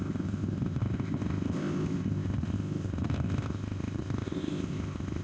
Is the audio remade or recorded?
remade